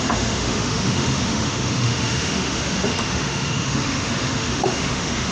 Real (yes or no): no